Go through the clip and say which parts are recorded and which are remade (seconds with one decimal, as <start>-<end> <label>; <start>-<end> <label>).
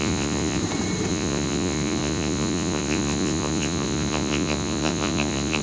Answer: 0.0-0.6 remade; 0.6-1.1 recorded; 1.1-5.6 remade